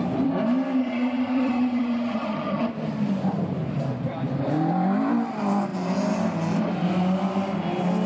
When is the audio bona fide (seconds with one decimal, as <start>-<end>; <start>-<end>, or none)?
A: 0.0-0.8; 2.7-8.1